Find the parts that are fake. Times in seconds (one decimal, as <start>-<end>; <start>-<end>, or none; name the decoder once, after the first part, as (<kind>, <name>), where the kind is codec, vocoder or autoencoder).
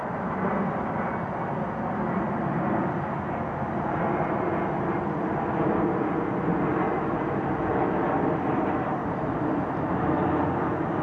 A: none